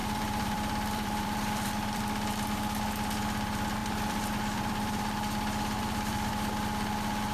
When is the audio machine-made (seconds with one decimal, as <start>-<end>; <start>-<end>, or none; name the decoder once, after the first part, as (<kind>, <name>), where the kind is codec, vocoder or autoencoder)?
0.0-2.0 (vocoder, BigVGAN v2); 3.8-6.3